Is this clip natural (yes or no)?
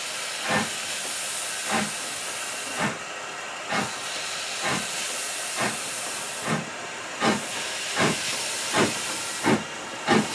yes